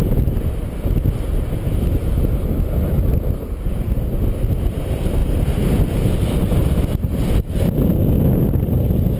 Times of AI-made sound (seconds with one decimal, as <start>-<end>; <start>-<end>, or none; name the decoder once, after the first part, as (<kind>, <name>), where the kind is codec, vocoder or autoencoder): none